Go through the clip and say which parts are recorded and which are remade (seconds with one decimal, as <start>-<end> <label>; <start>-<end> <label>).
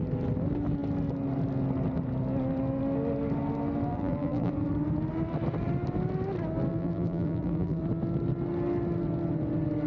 0.0-3.9 recorded; 3.9-4.5 remade; 4.5-6.7 recorded; 6.7-7.8 remade; 7.8-9.9 recorded